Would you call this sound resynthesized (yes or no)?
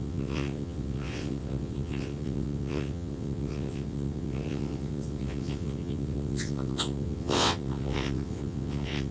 yes